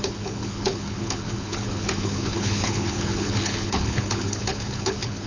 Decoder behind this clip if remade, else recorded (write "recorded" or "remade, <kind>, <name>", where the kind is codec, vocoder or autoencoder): remade, codec, HILCodec